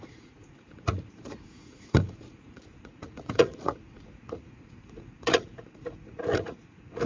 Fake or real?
fake